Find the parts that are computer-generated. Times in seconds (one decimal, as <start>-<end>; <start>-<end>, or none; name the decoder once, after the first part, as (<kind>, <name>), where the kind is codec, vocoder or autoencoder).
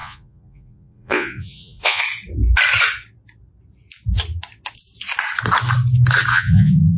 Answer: 0.0-2.0 (vocoder, Vocos); 6.3-7.0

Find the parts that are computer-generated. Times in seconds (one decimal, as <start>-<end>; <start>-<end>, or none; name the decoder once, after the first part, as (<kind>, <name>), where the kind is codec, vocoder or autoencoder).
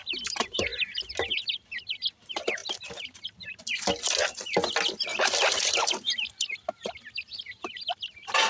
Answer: none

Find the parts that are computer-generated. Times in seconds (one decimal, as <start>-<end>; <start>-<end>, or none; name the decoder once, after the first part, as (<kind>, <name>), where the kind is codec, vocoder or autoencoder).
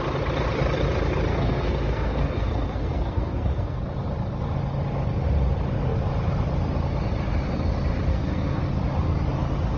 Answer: 1.3-3.8 (codec, SNAC); 8.1-8.6